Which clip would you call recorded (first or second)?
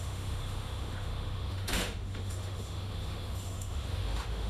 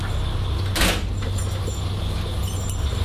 second